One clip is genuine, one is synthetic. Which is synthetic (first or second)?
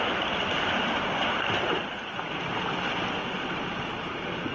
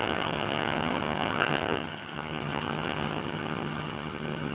second